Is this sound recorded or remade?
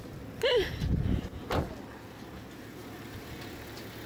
recorded